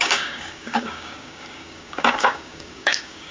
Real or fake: fake